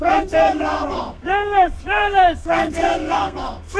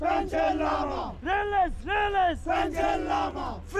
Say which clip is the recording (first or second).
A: second